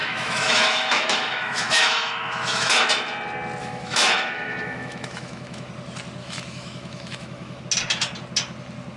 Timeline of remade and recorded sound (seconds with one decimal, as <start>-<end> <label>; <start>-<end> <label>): 0.0-2.9 remade; 2.9-3.6 recorded; 3.6-5.7 remade; 5.7-6.2 recorded; 6.2-7.6 remade; 7.6-9.0 recorded